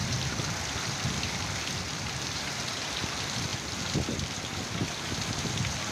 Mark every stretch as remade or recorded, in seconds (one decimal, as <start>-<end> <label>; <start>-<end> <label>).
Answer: 0.0-5.9 recorded